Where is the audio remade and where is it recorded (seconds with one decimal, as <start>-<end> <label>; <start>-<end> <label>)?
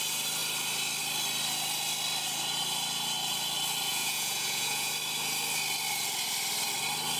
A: 0.0-3.9 recorded; 3.9-4.9 remade; 4.9-7.2 recorded